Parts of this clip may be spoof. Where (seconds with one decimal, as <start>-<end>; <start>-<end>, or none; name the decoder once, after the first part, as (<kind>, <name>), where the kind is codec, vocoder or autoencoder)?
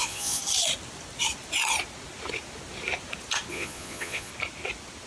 0.0-0.4 (vocoder, Vocos); 3.5-4.3